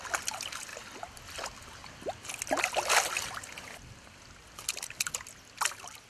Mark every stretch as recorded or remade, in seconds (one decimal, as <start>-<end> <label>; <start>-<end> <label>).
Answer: 0.0-6.1 recorded

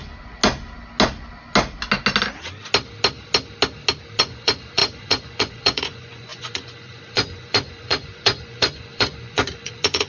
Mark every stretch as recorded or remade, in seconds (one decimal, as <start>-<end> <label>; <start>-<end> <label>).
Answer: 0.0-4.2 recorded; 4.2-10.1 remade